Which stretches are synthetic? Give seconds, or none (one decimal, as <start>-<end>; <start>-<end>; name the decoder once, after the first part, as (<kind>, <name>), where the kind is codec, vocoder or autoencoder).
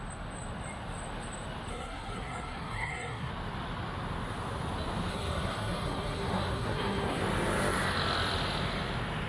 1.7-3.3 (codec, SNAC); 5.1-7.2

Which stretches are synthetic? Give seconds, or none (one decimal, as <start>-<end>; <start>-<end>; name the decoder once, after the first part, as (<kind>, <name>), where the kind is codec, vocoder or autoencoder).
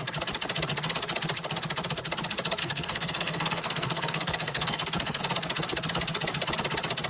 2.6-5.2 (codec, SNAC)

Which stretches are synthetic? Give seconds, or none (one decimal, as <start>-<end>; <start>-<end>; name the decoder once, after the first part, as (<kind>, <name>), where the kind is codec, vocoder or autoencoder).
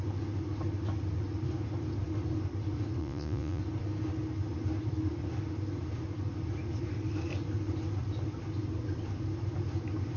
3.0-3.6 (vocoder, Vocos)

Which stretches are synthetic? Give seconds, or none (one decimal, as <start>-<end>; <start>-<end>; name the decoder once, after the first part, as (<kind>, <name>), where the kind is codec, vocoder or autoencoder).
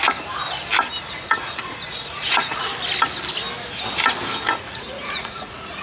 1.0-2.7 (vocoder, Vocos); 4.5-5.8